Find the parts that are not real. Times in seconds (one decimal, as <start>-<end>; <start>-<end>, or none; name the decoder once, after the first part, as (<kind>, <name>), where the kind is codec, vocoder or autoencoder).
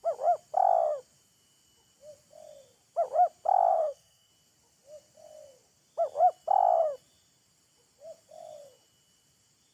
3.7-4.3 (codec, SNAC)